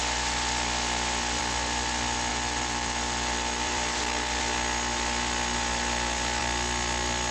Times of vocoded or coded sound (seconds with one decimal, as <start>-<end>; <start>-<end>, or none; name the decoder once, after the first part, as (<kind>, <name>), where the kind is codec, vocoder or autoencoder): 2.3-4.4 (vocoder, BigVGAN v2)